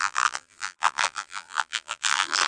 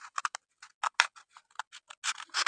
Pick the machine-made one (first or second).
first